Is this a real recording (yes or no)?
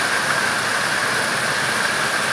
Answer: yes